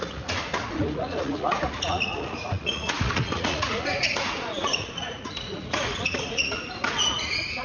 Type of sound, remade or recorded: remade